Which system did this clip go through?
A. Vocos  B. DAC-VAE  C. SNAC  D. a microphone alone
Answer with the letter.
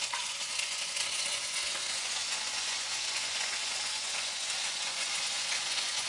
A